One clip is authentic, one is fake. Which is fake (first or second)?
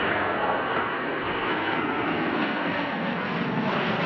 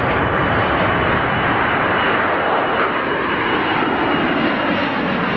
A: first